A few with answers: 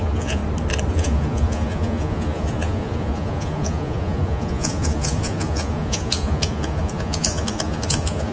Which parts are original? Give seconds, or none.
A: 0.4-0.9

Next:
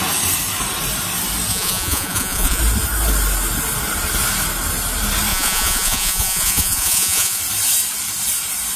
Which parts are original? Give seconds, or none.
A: 0.0-1.5; 2.6-5.3; 7.4-8.8

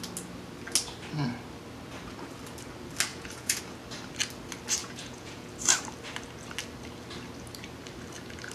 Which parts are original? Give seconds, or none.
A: 0.0-3.1; 3.6-4.8; 5.5-8.5

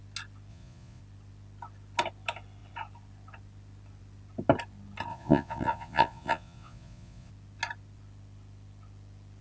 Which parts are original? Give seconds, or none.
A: 0.0-0.5; 1.0-5.1; 7.3-9.4

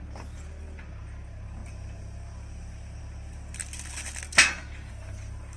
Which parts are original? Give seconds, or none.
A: 0.0-5.6

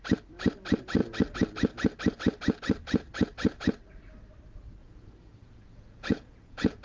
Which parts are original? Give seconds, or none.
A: 0.0-4.8

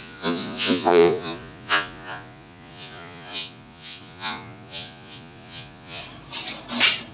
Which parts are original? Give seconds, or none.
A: 6.0-7.1